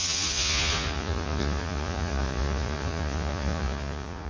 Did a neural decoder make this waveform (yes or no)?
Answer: yes